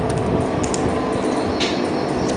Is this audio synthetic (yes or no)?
no